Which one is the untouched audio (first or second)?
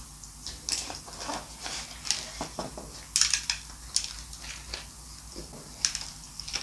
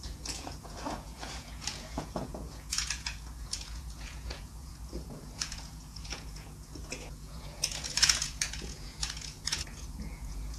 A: first